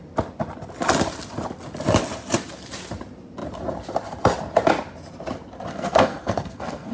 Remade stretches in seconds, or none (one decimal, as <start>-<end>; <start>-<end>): 5.7-6.9